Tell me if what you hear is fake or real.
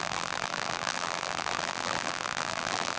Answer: fake